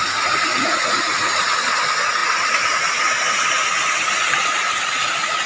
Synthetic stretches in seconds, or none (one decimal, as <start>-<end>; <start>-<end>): 0.5-1.7